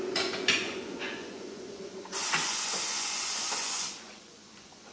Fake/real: fake